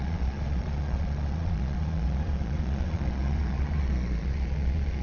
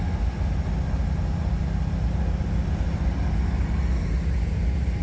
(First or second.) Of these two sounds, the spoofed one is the first